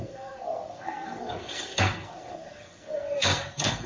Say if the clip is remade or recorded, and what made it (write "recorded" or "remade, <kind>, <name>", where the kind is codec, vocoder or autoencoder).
remade, codec, SNAC